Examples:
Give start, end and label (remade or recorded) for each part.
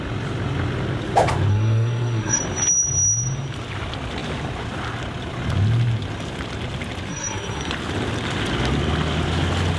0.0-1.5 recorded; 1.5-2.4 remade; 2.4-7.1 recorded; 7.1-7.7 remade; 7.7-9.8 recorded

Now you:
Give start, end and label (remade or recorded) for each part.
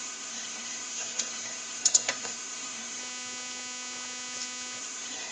0.0-3.0 remade; 3.0-4.8 recorded; 4.8-5.3 remade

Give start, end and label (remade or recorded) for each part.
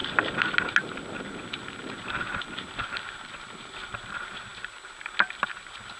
0.0-6.0 recorded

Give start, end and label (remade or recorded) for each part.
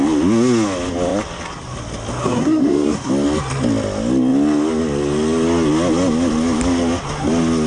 0.0-2.2 recorded; 2.2-3.1 remade; 3.1-7.7 recorded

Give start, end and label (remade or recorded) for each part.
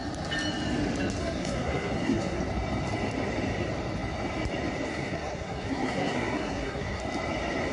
0.0-1.2 recorded; 1.2-2.4 remade; 2.4-4.9 recorded; 4.9-7.0 remade; 7.0-7.7 recorded